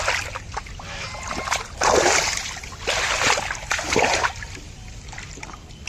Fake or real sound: real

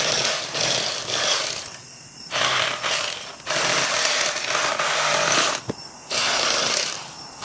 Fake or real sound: real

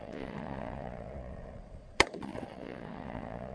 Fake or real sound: fake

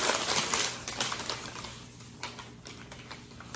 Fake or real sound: real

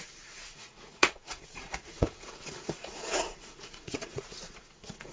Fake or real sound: fake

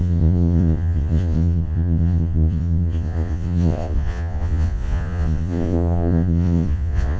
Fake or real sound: fake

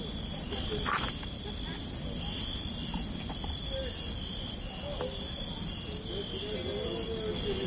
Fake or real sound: real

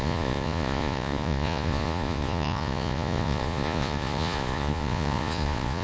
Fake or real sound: fake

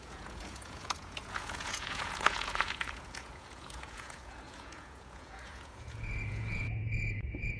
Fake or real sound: fake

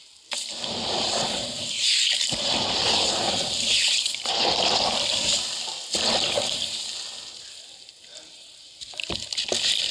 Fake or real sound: real